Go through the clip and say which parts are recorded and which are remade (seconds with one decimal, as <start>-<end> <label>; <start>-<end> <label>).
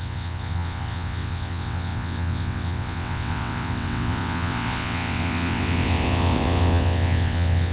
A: 0.0-7.7 remade